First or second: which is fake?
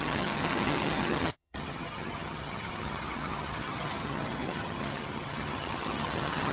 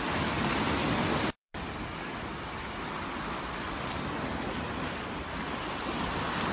first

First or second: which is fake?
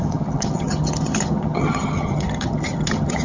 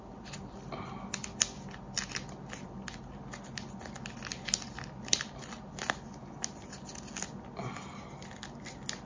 first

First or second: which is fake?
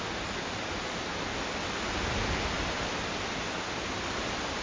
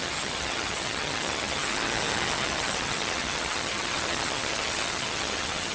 second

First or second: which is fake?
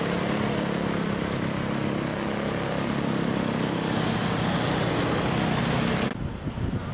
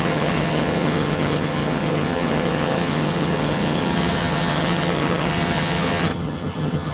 second